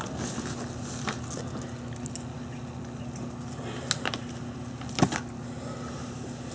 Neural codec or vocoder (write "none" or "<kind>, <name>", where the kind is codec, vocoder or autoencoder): none